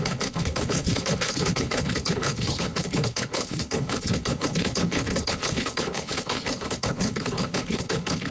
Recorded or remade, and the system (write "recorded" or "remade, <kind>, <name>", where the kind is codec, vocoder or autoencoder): remade, codec, HILCodec